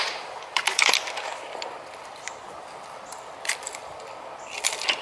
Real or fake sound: fake